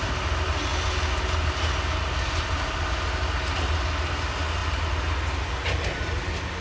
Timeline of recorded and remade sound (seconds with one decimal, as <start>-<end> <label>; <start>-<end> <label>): 0.0-6.6 recorded

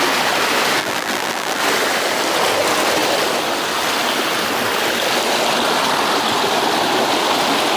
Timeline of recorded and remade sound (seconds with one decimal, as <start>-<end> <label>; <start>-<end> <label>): 0.0-0.8 recorded; 0.8-1.6 remade; 1.6-7.8 recorded

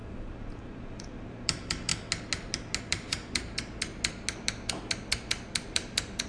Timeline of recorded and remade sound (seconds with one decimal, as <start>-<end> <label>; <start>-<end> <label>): 0.0-1.9 remade; 1.9-2.8 recorded; 2.8-3.9 remade; 3.9-4.7 recorded; 4.7-6.3 remade

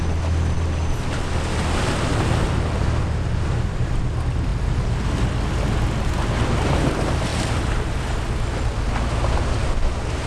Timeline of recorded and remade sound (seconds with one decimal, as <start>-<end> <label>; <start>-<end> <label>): 0.0-4.5 recorded; 4.5-5.2 remade; 5.2-7.3 recorded; 7.3-7.9 remade; 7.9-10.3 recorded

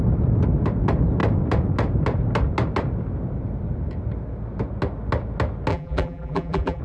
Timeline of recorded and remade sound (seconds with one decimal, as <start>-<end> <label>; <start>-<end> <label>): 0.0-5.7 recorded; 5.7-6.8 remade

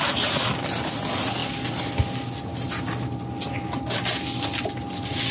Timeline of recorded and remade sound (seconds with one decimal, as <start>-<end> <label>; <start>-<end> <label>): 0.0-5.3 recorded

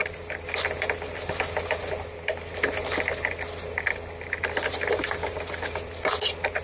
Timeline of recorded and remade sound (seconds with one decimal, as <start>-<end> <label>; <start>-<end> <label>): 0.0-6.6 recorded